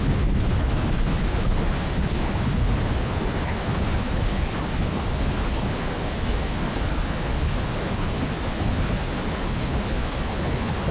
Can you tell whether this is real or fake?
fake